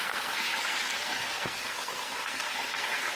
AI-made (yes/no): yes